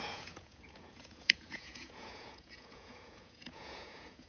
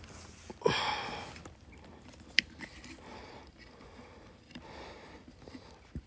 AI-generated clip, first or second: first